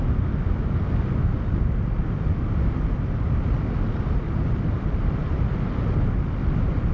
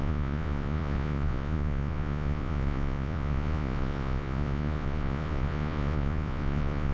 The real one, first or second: first